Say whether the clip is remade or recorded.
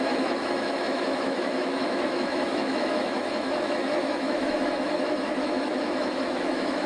remade